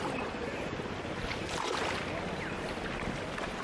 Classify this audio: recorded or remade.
recorded